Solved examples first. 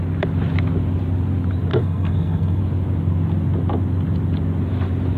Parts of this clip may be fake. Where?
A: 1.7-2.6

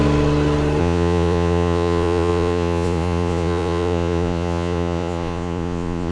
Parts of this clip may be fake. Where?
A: 0.8-6.1